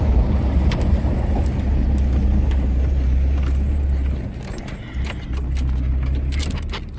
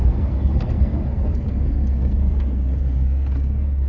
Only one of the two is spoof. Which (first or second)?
second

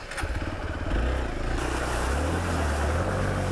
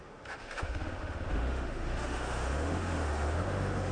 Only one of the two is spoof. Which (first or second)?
second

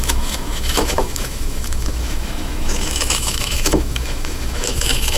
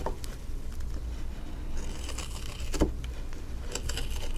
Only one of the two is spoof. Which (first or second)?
first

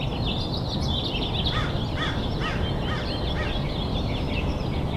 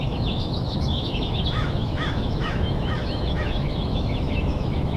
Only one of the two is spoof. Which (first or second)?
second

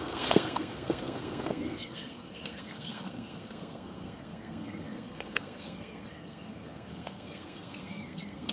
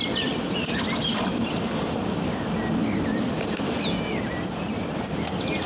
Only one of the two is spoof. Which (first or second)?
first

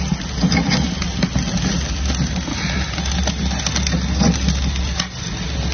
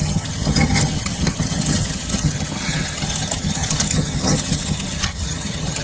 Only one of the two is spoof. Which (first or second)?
second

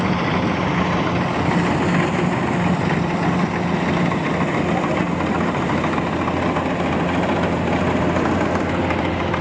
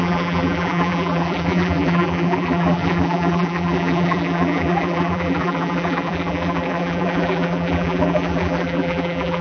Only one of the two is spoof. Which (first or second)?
second